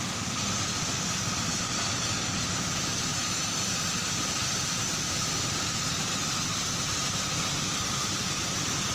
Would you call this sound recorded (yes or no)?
no